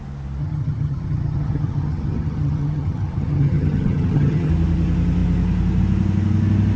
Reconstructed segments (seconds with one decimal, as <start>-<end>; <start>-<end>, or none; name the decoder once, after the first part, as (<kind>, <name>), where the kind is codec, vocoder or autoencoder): 0.4-4.5 (vocoder, HiFi-GAN)

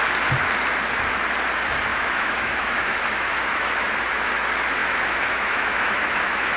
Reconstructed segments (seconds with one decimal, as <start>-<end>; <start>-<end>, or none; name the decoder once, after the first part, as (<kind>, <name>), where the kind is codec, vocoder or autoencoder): 1.9-4.3 (autoencoder, DAC-VAE); 4.8-6.6

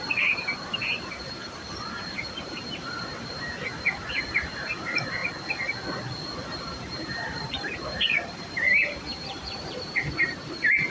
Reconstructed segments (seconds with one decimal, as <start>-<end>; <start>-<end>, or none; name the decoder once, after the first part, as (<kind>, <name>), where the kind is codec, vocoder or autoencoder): 0.0-5.2 (vocoder, BigVGAN v2); 6.6-10.9

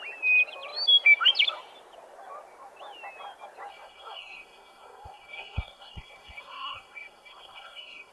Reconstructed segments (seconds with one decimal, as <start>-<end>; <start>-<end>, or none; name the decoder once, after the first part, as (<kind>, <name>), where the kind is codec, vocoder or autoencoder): 3.7-8.1 (codec, SNAC)

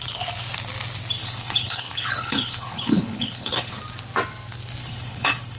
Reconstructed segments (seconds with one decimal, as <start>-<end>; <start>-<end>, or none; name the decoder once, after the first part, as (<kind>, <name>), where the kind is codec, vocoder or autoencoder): 1.2-3.8 (codec, HILCodec); 4.8-5.6

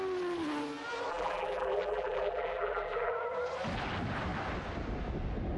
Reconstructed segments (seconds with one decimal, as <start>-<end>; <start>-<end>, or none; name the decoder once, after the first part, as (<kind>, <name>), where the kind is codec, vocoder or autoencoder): 1.1-3.1 (vocoder, BigVGAN v2)